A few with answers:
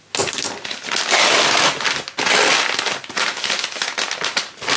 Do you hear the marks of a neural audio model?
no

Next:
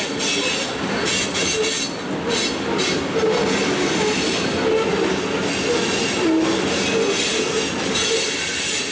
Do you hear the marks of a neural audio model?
no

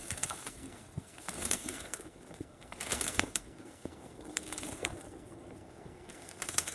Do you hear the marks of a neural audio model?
yes